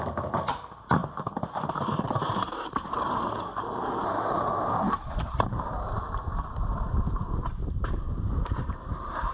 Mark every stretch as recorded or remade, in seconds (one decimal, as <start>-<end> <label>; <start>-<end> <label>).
0.0-9.3 remade